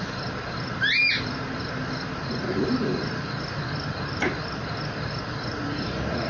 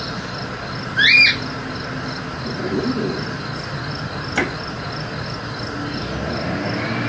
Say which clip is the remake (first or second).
first